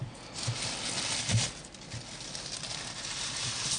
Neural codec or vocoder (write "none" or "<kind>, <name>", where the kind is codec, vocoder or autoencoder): none